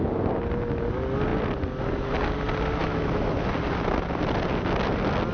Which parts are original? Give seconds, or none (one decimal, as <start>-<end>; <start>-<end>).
0.0-2.8; 3.3-5.3